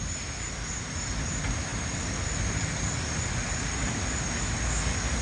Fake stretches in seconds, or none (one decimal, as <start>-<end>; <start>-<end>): none